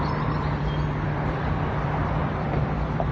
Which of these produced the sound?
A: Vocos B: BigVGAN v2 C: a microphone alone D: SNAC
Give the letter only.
B